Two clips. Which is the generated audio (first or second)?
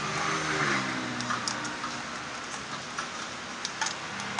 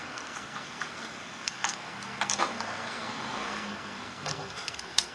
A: second